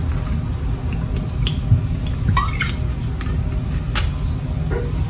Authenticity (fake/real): real